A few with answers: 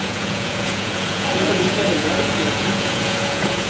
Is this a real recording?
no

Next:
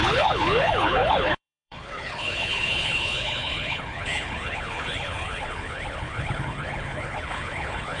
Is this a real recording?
no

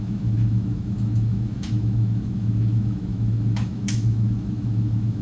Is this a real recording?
no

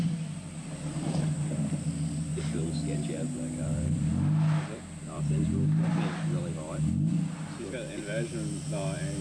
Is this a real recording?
yes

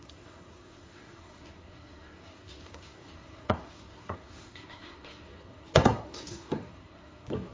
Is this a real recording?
no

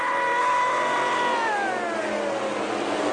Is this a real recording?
yes